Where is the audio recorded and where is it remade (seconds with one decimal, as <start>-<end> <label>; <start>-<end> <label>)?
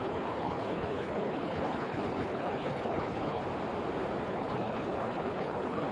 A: 0.0-3.4 remade; 3.4-4.3 recorded; 4.3-5.9 remade